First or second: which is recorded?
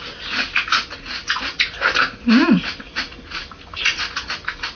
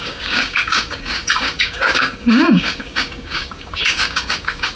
first